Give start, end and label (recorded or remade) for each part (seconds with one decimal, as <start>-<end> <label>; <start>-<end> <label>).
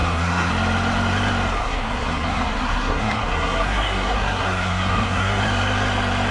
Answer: 0.0-0.5 remade; 0.5-1.6 recorded; 1.6-5.4 remade; 5.4-6.3 recorded